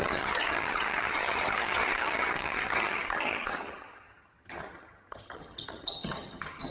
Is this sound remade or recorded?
remade